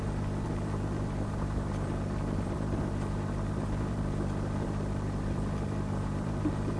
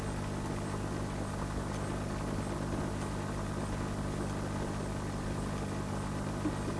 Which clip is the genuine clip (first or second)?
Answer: second